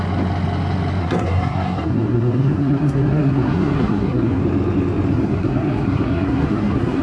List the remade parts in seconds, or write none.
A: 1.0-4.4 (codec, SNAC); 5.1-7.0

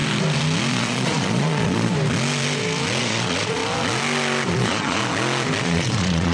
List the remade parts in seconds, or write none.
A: 0.7-1.9 (vocoder, Vocos); 3.0-3.6; 4.5-5.0; 5.6-6.3

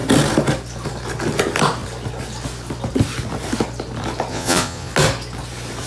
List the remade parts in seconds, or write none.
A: 4.3-4.9 (vocoder, Vocos)

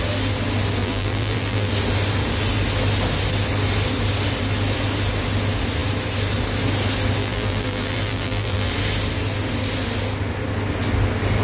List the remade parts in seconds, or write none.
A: 0.8-1.7 (vocoder, BigVGAN v2); 7.2-8.7